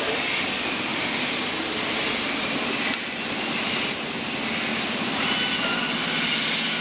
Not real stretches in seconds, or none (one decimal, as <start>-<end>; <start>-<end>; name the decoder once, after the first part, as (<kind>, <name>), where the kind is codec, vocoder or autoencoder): 4.7-5.4 (vocoder, BigVGAN v2)